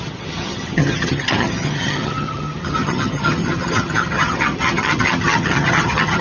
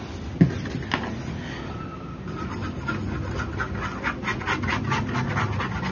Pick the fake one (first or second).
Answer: first